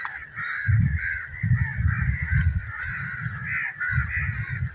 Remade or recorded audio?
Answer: recorded